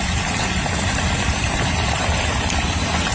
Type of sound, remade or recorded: remade